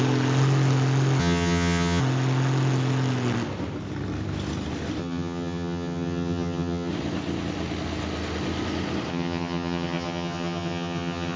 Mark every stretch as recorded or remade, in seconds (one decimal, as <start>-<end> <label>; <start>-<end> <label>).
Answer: 0.0-1.2 recorded; 1.2-2.0 remade; 2.0-5.0 recorded; 5.0-6.9 remade; 6.9-9.1 recorded; 9.1-11.4 remade